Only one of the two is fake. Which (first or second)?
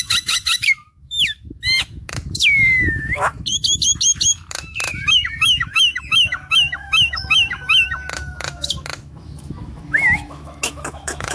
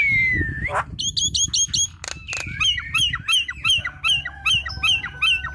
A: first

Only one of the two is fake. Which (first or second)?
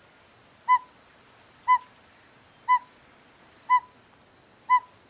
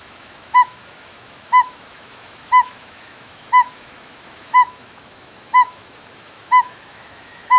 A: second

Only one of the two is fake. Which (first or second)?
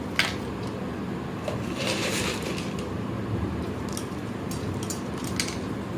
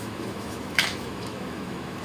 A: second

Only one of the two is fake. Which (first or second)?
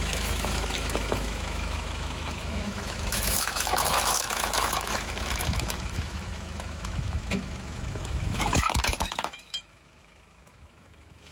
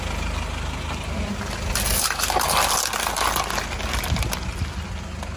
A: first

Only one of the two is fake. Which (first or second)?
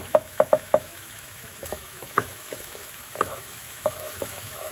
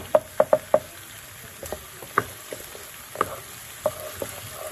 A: first